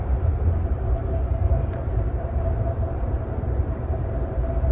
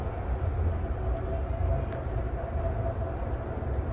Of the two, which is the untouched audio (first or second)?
second